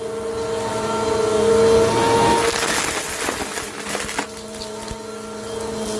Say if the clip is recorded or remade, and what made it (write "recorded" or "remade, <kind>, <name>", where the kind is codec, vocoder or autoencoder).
recorded